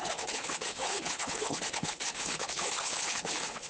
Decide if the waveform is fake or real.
fake